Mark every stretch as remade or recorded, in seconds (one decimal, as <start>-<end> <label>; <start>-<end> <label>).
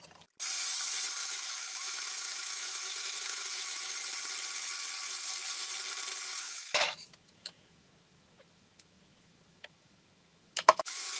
0.0-1.2 recorded; 1.2-3.9 remade; 3.9-6.3 recorded; 6.3-11.2 remade